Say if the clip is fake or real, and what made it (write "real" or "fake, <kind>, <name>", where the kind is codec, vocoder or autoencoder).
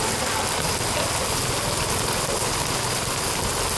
real